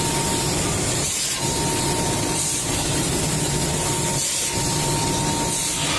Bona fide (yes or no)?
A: yes